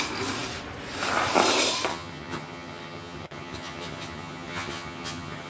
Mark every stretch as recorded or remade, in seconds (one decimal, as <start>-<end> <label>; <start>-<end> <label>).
0.0-1.9 recorded; 1.9-5.5 remade